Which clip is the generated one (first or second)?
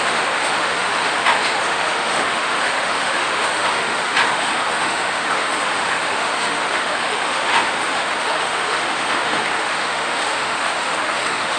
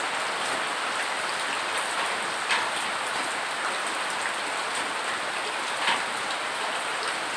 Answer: first